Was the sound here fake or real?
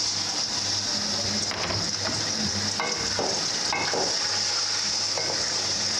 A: real